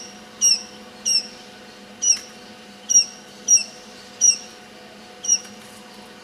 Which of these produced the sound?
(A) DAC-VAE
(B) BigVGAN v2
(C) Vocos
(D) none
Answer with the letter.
D